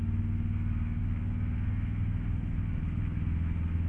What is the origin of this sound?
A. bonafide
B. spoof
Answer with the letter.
A